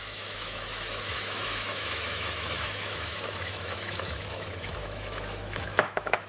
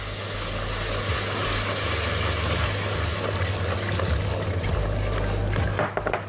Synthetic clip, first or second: first